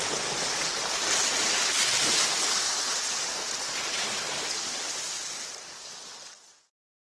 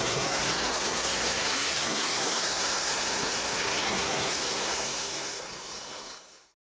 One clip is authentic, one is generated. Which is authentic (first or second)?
first